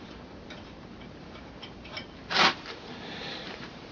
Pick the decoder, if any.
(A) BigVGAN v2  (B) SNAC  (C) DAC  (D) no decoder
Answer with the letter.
A